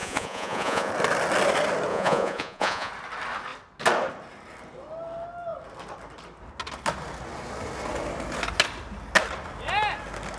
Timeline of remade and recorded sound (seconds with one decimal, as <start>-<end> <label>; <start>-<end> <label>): 0.0-0.9 remade; 0.9-1.9 recorded; 1.9-2.9 remade; 2.9-10.4 recorded